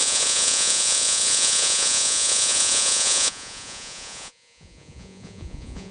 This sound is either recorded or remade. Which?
remade